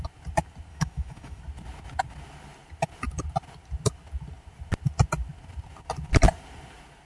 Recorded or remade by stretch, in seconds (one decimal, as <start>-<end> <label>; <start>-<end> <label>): 0.0-0.7 recorded; 0.7-1.4 remade; 1.4-7.1 recorded